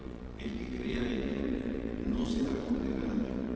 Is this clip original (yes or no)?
no